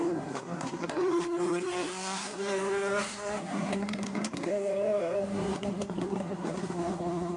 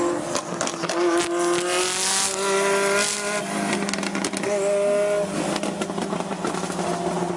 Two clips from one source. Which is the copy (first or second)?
first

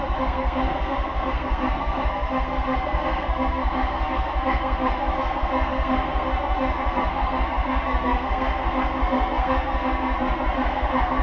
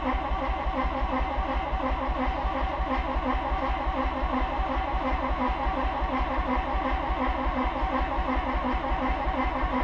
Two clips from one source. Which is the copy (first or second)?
first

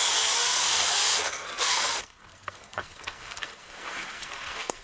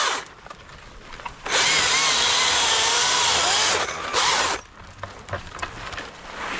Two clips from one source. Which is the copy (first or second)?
first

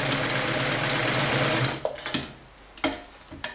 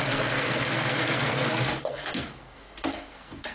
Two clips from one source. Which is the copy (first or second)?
second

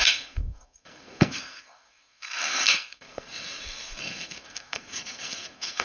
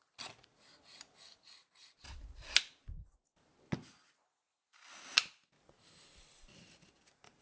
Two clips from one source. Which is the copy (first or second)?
first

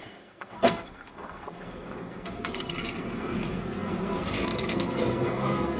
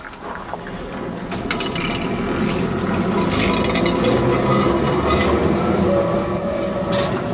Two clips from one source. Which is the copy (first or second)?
first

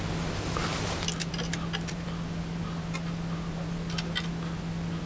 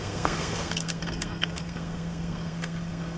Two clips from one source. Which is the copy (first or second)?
second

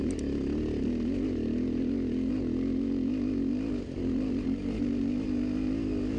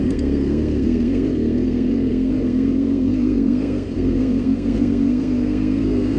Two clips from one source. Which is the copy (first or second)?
second